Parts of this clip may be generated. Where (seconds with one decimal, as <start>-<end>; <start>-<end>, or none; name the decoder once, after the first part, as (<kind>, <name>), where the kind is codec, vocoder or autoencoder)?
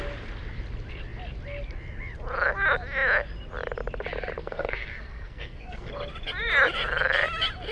4.4-5.9 (codec, SNAC)